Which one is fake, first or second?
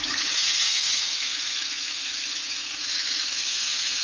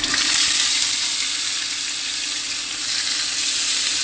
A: first